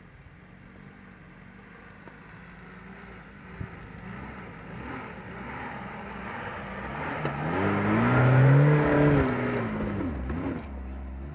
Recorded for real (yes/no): yes